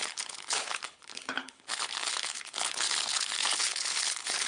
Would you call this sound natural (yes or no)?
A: no